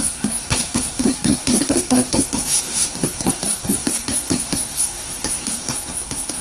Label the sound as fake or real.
fake